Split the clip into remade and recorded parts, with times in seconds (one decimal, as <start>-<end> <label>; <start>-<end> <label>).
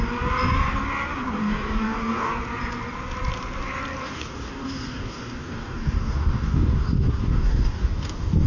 0.0-1.4 recorded; 1.4-2.3 remade; 2.3-4.0 recorded; 4.0-8.5 remade